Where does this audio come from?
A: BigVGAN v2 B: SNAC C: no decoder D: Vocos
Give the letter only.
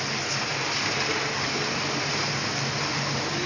C